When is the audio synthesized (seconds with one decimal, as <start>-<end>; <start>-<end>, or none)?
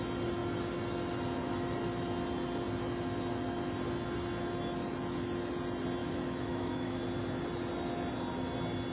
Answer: 6.0-7.0